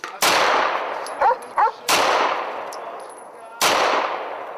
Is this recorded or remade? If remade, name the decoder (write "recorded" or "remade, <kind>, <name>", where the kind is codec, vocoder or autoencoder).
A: recorded